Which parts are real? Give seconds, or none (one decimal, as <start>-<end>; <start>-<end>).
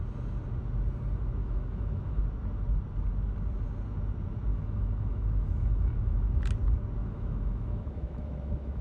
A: 0.0-1.4; 2.2-4.5; 6.2-7.0